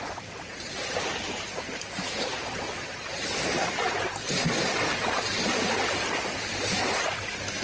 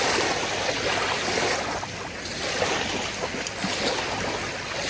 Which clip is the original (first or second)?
second